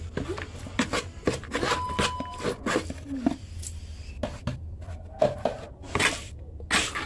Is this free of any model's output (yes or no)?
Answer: yes